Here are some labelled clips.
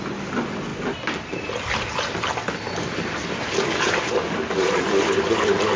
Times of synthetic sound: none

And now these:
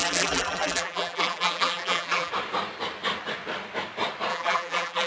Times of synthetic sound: 0.0-2.3 (vocoder, BigVGAN v2); 4.3-5.1

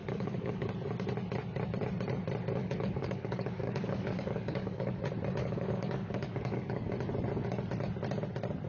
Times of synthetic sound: 0.0-0.7 (codec, DAC); 2.6-5.0; 5.4-6.9

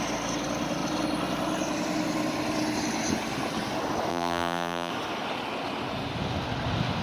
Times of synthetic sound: 4.1-4.9 (vocoder, BigVGAN v2)

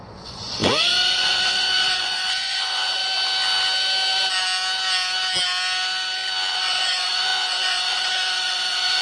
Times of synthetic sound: 0.0-3.0 (vocoder, Vocos); 6.5-9.0

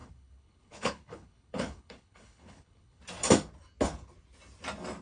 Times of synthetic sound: 0.0-3.0 (codec, HILCodec)

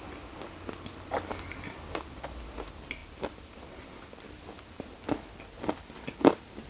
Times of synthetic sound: none